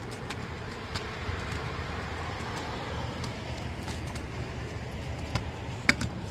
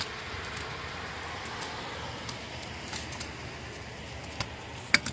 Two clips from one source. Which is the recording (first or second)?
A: second